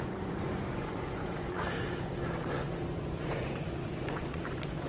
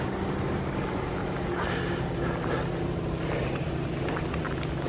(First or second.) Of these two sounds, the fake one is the first